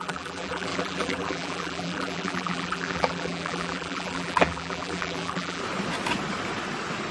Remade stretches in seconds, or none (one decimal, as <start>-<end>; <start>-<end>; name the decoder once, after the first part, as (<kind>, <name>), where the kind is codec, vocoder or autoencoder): 0.0-5.6 (vocoder, BigVGAN v2)